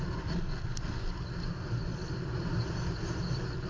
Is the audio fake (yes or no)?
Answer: no